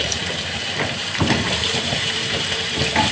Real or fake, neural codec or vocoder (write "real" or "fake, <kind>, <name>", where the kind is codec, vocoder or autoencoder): fake, vocoder, BigVGAN v2